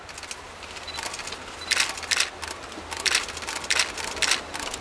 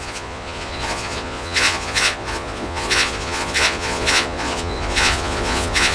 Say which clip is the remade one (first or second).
second